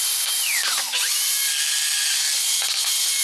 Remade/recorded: recorded